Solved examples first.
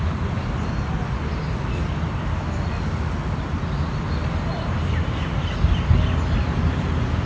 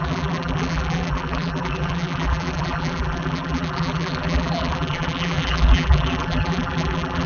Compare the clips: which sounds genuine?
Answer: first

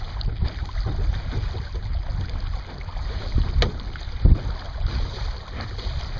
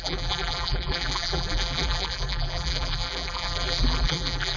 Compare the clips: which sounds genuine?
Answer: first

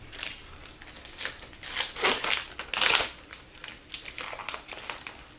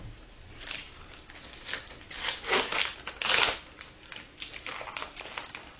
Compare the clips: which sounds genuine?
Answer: first